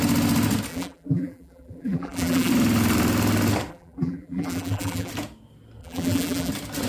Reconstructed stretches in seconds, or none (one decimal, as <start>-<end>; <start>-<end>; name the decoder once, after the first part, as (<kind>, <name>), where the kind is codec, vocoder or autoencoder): 0.7-2.5 (vocoder, BigVGAN v2); 3.7-5.1; 5.8-6.5